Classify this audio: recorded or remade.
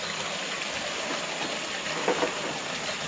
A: recorded